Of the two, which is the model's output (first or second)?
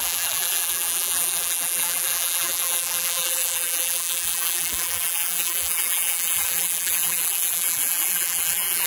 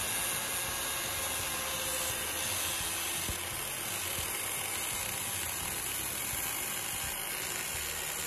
first